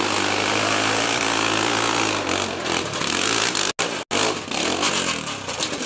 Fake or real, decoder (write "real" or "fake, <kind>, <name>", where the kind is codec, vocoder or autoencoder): real